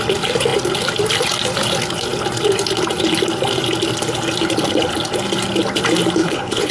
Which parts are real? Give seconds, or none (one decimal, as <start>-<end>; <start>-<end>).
0.0-6.2